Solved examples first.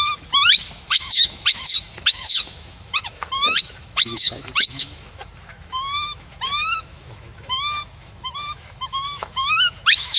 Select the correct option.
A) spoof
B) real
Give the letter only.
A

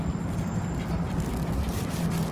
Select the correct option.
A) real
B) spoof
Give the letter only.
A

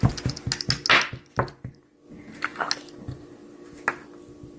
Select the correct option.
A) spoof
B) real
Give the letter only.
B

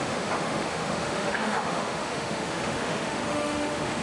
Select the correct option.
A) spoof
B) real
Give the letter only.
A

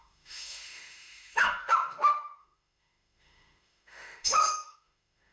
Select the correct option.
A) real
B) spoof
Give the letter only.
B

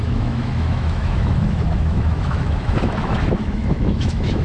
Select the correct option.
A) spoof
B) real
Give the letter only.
A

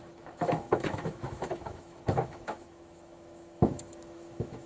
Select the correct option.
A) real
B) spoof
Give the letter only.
B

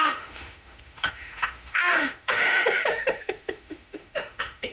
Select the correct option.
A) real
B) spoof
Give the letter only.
B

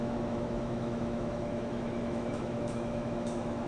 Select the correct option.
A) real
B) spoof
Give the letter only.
B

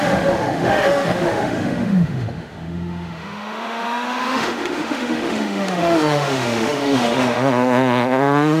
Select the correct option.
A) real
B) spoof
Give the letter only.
B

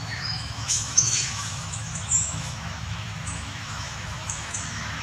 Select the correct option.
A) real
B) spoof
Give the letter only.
B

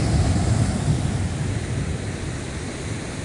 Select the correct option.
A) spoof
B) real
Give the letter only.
B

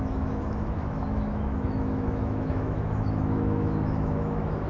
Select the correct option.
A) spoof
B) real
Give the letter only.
A